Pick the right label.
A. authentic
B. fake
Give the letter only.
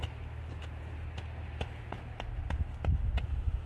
A